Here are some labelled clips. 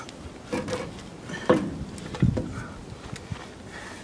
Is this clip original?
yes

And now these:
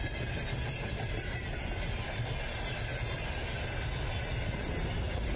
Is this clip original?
yes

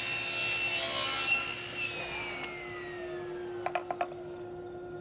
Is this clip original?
yes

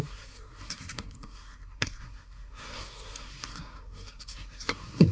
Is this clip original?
no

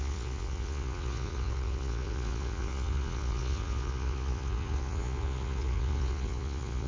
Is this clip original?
no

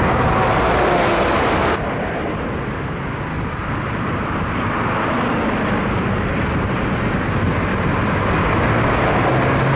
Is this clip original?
yes